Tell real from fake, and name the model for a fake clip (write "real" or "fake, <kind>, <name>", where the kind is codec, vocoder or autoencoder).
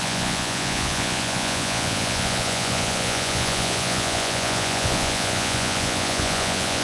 fake, vocoder, Vocos